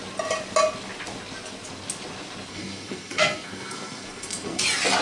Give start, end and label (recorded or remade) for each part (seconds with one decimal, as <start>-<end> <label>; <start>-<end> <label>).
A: 0.0-2.5 recorded; 2.5-4.6 remade; 4.6-5.0 recorded